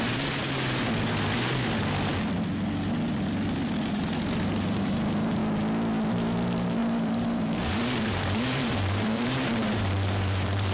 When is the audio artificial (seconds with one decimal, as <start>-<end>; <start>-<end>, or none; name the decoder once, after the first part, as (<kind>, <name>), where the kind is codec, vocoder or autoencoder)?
0.0-2.1 (vocoder, BigVGAN v2); 3.9-5.4; 6.1-10.7